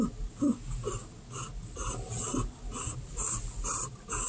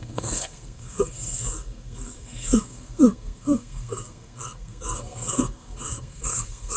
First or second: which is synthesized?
second